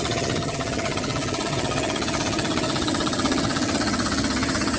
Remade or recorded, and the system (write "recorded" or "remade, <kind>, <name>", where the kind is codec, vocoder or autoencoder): remade, vocoder, HiFi-GAN